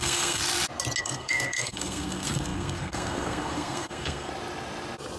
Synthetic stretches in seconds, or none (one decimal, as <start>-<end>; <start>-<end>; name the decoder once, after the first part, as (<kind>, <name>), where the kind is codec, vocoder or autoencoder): 0.0-0.4 (codec, SNAC); 1.0-4.3